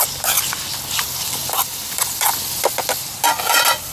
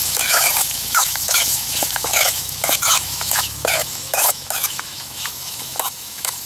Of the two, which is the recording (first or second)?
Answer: first